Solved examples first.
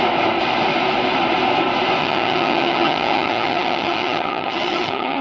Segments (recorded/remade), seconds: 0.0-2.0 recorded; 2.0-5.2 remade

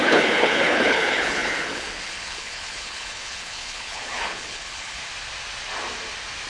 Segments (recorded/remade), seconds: 0.0-5.0 remade; 5.0-6.5 recorded